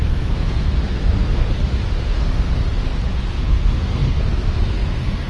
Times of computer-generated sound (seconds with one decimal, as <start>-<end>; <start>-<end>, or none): 0.0-1.6; 2.1-2.6; 3.2-5.3